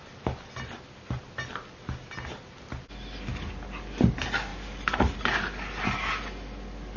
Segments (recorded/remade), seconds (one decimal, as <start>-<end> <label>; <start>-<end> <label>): 0.0-4.5 recorded; 4.5-5.2 remade; 5.2-7.0 recorded